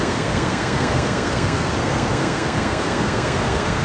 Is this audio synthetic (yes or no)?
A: yes